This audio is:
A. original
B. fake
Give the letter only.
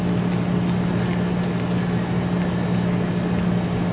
A